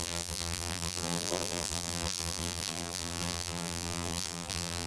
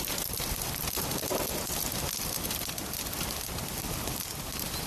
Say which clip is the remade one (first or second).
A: first